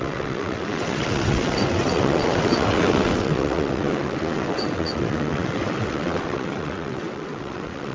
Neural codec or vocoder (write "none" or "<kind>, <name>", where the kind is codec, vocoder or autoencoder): vocoder, WaveNeXt